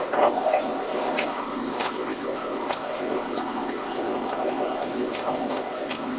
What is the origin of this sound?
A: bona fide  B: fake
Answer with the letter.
B